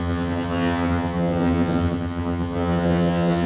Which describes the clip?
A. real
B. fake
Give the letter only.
B